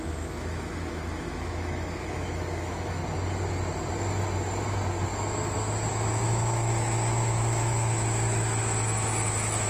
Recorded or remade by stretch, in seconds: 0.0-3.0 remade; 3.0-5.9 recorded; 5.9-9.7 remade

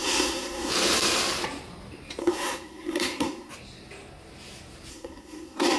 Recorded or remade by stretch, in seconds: 0.0-0.7 remade; 0.7-2.2 recorded; 2.2-3.5 remade; 3.5-4.9 recorded; 4.9-5.8 remade

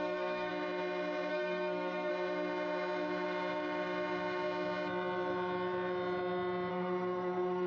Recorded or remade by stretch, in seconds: 0.0-0.5 remade; 0.5-1.3 recorded; 1.3-2.1 remade; 2.1-6.7 recorded; 6.7-7.7 remade

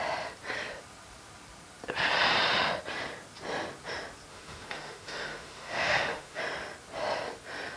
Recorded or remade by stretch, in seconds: 0.0-4.3 recorded; 4.3-6.4 remade; 6.4-7.8 recorded

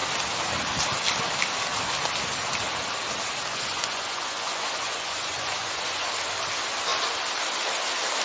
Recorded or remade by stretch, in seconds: 0.0-3.5 recorded; 3.5-6.1 remade; 6.1-8.2 recorded

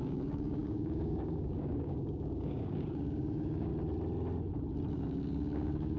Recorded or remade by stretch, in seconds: 0.0-3.7 remade; 3.7-4.9 recorded; 4.9-6.0 remade

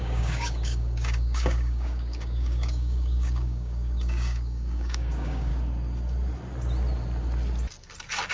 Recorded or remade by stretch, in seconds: 0.0-5.5 remade; 5.5-8.3 recorded